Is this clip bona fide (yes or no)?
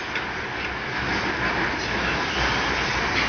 yes